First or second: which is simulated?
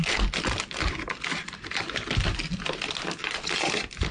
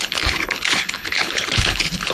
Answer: second